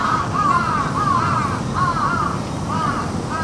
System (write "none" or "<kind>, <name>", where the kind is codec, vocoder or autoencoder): none